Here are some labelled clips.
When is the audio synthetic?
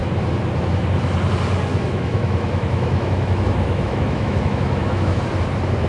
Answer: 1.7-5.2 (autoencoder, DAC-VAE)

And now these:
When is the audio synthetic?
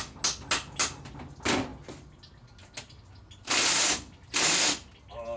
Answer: none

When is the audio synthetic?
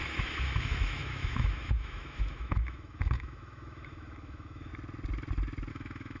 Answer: 0.0-4.7 (autoencoder, DAC-VAE); 5.7-6.2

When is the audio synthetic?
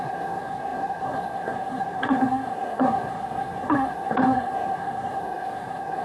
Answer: 0.0-6.0 (codec, SNAC)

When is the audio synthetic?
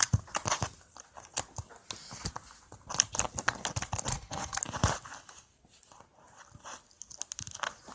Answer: 4.1-4.6 (codec, HILCodec)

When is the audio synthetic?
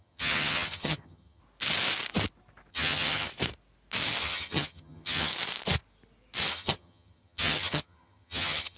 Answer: 0.0-1.4 (vocoder, HiFi-GAN); 2.7-3.3; 4.2-5.3; 6.5-8.8